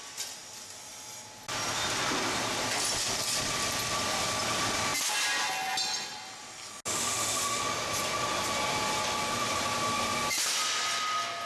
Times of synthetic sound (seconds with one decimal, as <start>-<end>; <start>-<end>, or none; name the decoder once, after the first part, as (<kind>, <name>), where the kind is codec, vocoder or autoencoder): 6.9-7.6 (autoencoder, DAC-VAE)